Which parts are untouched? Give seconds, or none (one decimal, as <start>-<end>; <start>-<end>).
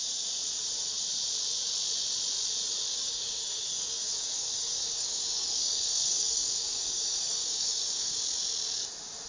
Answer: 0.0-2.9; 8.2-9.3